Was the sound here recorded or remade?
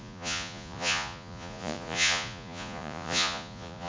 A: remade